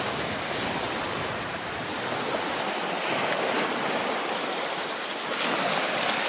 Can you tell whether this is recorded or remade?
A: recorded